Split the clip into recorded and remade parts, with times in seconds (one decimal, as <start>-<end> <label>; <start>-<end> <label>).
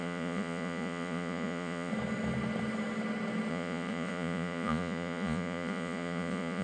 0.0-1.9 remade; 1.9-3.5 recorded; 3.5-6.6 remade